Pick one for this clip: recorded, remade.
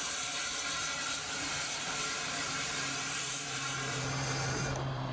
remade